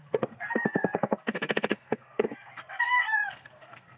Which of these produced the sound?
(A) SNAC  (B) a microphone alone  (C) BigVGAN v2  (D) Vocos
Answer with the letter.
A